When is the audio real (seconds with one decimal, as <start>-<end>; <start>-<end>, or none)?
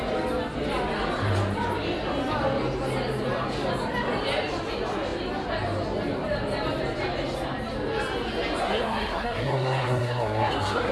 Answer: 0.0-8.6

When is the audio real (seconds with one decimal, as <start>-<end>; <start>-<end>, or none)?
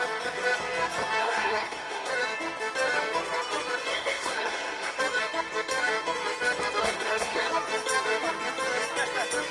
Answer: 0.0-1.2; 2.1-3.9; 5.0-6.8; 7.5-9.5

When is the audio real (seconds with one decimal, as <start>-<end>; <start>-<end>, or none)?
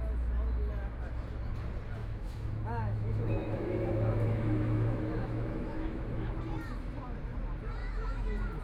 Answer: 0.0-2.0; 6.3-7.8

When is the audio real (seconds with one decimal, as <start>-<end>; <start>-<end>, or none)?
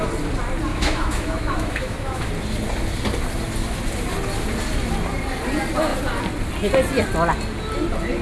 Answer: 0.0-0.7; 2.3-8.2